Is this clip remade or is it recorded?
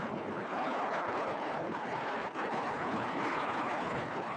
remade